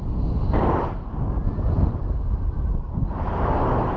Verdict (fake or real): real